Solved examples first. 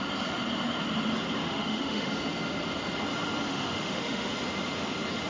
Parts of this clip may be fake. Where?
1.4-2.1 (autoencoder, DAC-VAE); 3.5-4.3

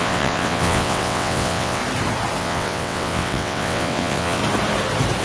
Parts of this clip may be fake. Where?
0.0-1.8 (vocoder, WaveNeXt); 2.4-4.4

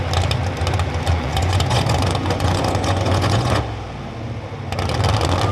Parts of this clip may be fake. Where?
1.1-3.6 (vocoder, Vocos)

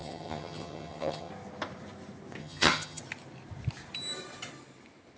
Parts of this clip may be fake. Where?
0.0-1.3 (vocoder, HiFi-GAN); 2.4-3.0

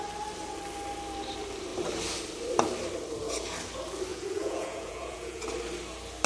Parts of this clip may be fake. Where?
4.1-5.4 (vocoder, Vocos)

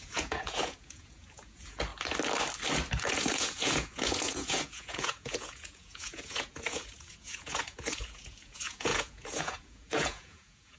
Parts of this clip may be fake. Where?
0.0-1.9 (vocoder, Vocos); 3.0-10.8

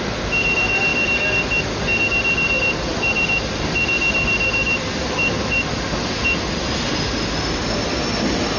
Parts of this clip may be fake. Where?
none